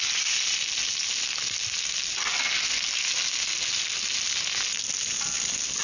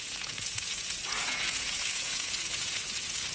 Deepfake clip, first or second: second